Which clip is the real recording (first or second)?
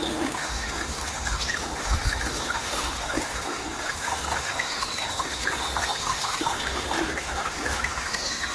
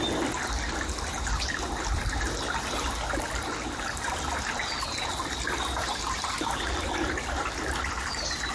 second